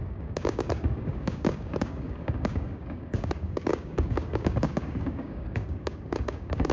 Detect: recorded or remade remade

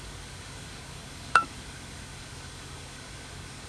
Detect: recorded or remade remade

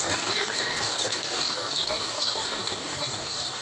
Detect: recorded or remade remade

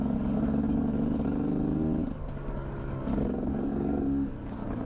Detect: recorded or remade remade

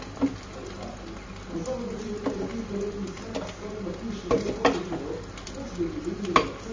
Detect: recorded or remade recorded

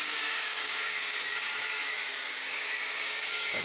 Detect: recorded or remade remade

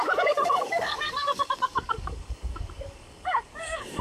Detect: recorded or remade remade